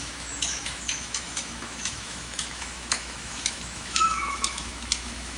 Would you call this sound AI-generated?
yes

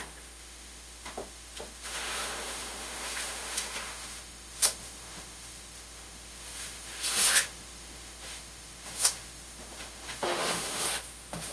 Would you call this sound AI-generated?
yes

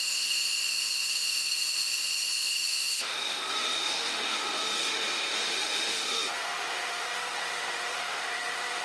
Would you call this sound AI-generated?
yes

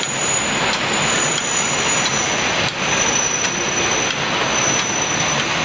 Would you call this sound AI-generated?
no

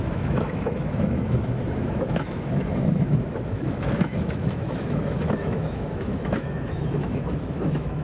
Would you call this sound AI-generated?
yes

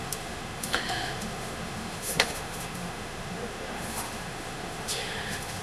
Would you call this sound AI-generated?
yes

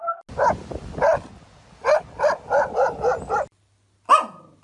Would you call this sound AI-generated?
no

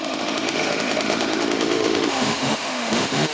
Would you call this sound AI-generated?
yes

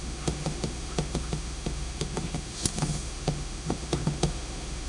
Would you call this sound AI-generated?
yes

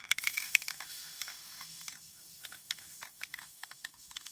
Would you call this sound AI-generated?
yes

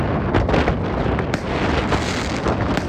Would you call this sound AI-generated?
no